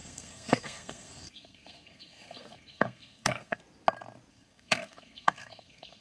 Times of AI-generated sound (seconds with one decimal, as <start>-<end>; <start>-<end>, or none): 0.0-3.6; 4.3-6.0